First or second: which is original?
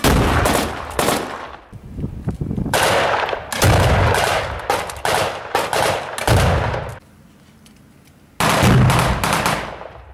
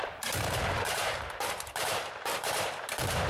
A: first